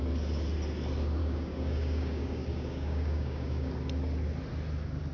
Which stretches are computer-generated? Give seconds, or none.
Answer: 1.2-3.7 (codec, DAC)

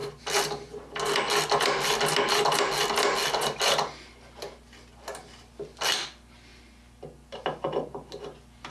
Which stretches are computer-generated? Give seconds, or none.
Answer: none

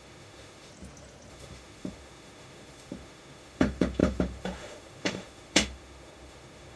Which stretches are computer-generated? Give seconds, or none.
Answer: 0.0-0.7 (autoencoder, DAC-VAE); 1.3-6.8

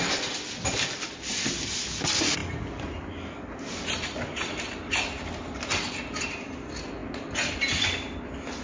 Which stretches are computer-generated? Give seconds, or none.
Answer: none